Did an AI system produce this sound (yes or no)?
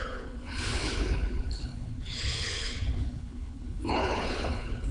yes